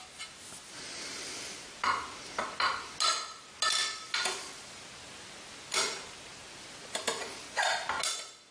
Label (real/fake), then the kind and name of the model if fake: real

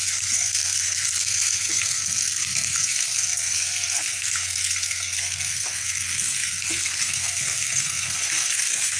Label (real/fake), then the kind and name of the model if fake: fake, codec, SNAC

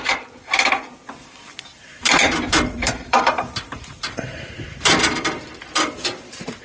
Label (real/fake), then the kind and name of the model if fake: fake, vocoder, BigVGAN v2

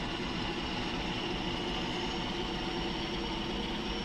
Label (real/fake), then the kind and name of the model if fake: real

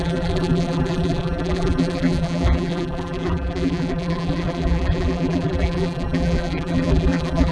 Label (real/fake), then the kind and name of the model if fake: fake, vocoder, BigVGAN v2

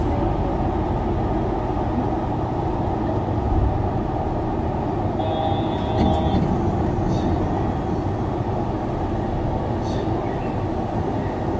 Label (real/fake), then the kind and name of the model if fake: real